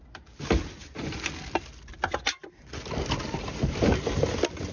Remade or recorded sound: recorded